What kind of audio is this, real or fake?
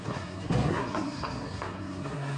fake